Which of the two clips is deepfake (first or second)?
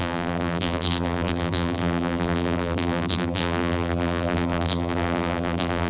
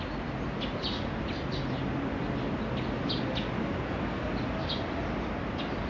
first